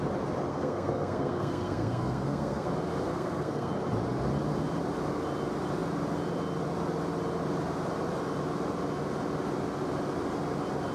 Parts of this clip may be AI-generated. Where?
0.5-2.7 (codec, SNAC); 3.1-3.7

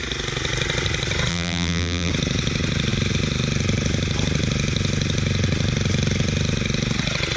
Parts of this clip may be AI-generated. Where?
1.3-2.1 (vocoder, BigVGAN v2)